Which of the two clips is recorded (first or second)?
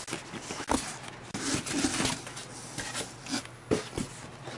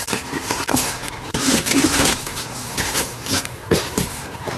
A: first